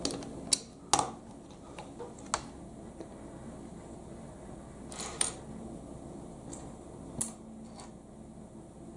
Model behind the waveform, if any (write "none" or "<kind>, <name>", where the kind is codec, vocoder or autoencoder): none